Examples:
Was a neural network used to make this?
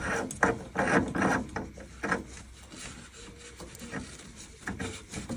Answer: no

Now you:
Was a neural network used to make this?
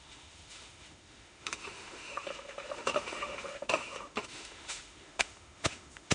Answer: yes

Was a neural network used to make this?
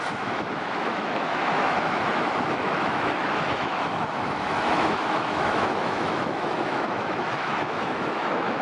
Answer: yes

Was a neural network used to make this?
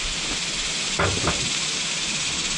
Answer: no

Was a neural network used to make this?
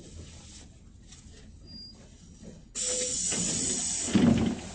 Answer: no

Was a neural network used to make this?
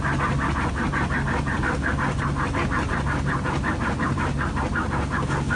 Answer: no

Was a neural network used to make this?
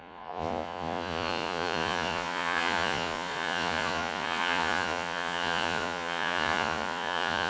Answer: yes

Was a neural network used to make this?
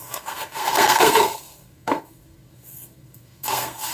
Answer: yes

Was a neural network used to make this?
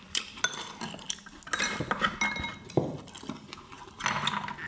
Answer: no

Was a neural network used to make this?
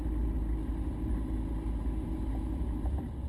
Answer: no